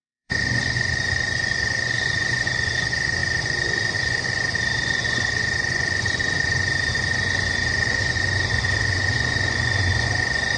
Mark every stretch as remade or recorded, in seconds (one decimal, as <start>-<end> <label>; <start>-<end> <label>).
0.0-10.6 remade